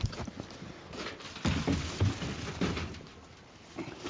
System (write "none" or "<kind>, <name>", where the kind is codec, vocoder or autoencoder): none